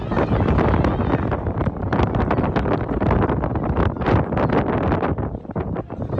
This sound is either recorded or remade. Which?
recorded